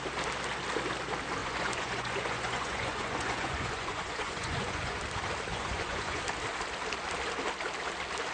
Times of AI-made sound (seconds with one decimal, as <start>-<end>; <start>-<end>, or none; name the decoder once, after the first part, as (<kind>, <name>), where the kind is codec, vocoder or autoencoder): 1.4-5.0 (vocoder, Vocos); 5.5-6.2